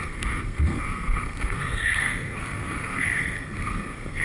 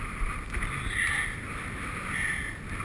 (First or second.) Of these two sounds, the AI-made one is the first